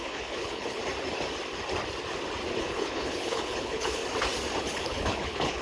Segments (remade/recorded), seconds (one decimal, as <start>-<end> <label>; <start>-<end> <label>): 0.0-0.8 remade; 0.8-2.6 recorded; 2.6-4.0 remade; 4.0-4.6 recorded; 4.6-5.6 remade